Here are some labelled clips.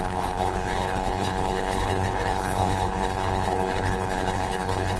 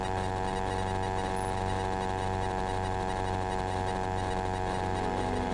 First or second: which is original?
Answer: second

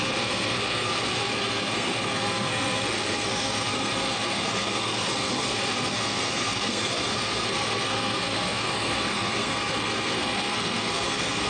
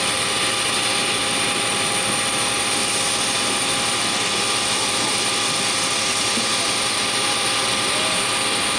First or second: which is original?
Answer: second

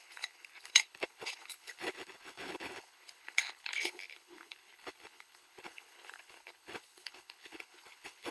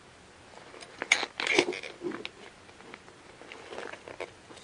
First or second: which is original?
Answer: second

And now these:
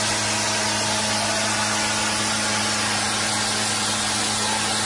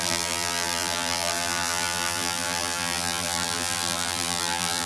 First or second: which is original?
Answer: first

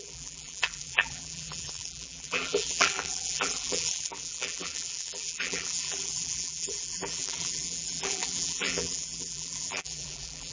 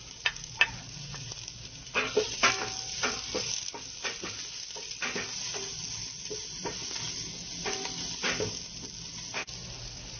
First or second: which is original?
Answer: second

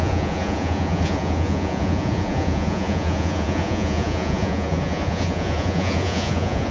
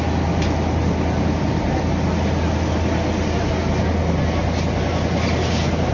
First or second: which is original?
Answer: second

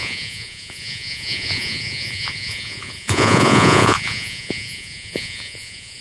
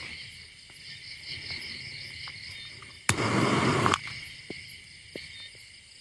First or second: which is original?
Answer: second